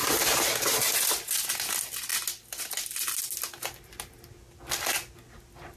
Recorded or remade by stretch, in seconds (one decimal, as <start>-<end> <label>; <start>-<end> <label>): 0.0-5.8 recorded